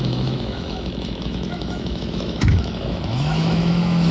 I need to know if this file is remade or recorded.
remade